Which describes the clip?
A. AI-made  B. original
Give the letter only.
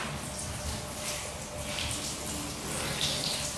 B